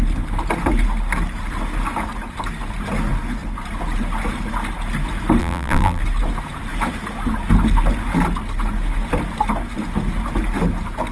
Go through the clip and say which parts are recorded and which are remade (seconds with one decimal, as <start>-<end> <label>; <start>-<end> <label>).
0.0-5.4 recorded; 5.4-6.0 remade; 6.0-11.1 recorded